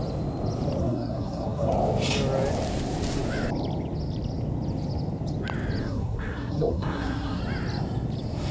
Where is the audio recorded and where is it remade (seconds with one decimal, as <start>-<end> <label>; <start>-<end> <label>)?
0.0-0.8 recorded; 0.8-1.7 remade; 1.7-5.8 recorded; 5.8-7.4 remade; 7.4-8.5 recorded